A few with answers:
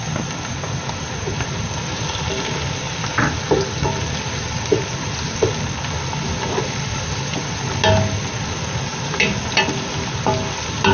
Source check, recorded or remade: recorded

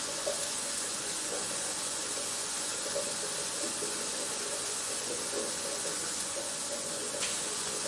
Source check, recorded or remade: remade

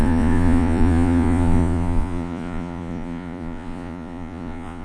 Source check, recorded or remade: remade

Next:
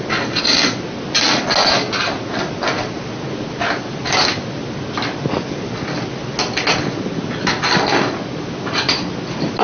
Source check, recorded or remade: recorded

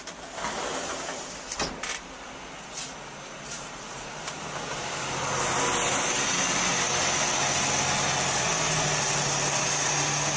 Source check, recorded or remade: recorded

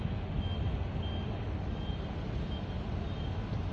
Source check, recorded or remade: recorded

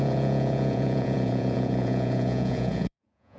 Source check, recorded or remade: remade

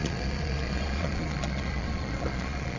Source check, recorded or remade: remade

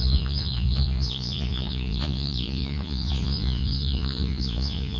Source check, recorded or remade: remade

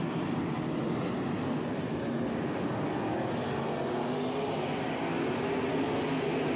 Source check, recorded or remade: recorded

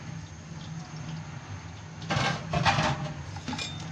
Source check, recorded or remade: recorded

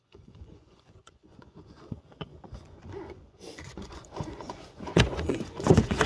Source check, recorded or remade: remade